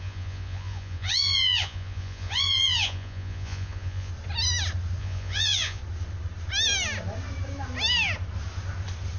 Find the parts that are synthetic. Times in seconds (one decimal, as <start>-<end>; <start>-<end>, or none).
0.0-4.1; 5.0-5.8